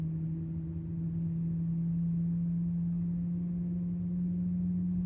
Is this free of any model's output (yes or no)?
yes